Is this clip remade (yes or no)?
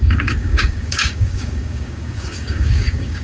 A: yes